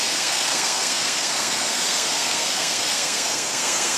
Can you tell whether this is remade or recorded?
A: remade